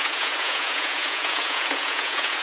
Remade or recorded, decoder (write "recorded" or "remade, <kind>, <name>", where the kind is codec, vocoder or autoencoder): remade, vocoder, Vocos